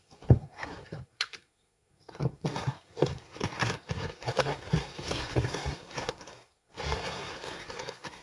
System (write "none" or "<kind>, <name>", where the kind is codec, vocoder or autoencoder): codec, SNAC